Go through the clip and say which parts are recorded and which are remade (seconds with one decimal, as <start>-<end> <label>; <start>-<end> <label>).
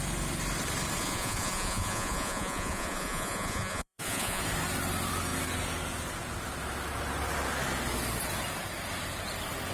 0.0-1.0 recorded; 1.0-4.4 remade; 4.4-9.7 recorded